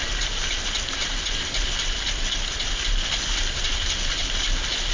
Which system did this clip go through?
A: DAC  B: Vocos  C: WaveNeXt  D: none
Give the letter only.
D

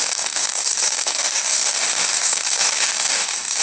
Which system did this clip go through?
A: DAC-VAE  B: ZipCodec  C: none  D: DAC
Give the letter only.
D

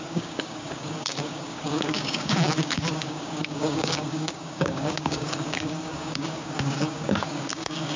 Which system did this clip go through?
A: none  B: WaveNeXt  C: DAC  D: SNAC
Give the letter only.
C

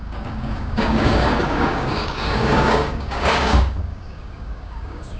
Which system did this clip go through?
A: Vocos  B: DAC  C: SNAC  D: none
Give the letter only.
B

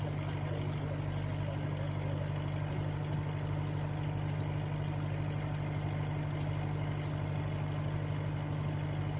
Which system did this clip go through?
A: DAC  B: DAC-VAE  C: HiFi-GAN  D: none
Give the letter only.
D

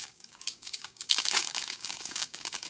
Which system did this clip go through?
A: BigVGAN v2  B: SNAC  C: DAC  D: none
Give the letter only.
C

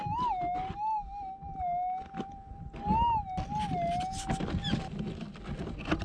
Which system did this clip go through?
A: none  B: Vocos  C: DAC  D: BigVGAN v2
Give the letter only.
A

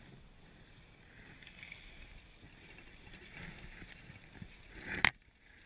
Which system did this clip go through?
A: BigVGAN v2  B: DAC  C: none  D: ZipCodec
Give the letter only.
C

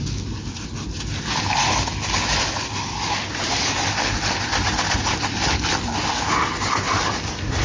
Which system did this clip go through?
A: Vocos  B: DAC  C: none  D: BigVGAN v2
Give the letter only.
C